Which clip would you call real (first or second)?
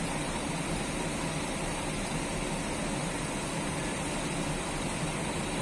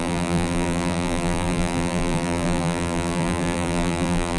first